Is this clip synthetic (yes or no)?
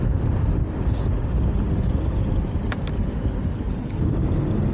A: no